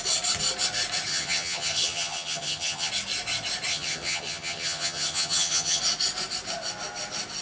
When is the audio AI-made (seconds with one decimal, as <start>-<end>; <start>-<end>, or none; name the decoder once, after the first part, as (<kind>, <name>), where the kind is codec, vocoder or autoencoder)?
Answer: 1.1-2.9 (vocoder, HiFi-GAN); 3.7-5.8